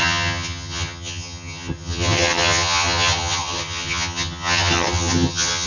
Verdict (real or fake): fake